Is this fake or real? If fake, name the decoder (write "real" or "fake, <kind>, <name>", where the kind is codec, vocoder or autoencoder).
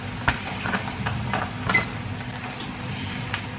real